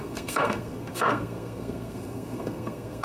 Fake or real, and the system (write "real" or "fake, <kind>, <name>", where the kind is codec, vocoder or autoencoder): fake, codec, SNAC